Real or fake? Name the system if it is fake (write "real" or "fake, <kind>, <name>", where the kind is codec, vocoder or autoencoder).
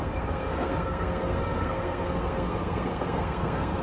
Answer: fake, codec, SNAC